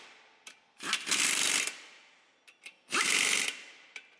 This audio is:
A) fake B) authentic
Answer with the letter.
B